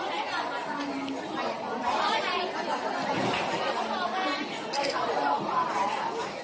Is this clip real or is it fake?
real